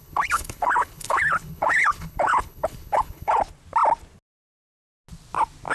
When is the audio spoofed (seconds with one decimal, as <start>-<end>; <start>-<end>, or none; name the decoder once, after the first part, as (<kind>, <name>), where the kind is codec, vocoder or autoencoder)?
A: 0.0-3.4 (codec, HILCodec)